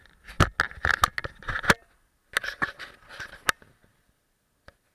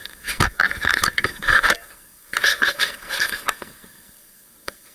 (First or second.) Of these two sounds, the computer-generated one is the second